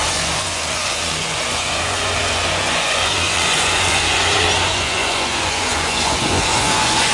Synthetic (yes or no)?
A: yes